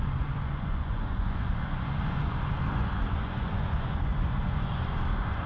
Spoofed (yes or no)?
yes